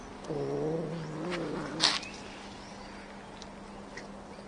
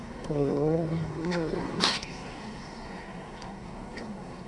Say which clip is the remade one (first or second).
second